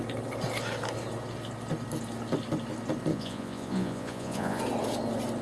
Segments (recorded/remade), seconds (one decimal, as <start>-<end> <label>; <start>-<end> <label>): 0.0-3.1 recorded; 3.1-4.6 remade; 4.6-5.4 recorded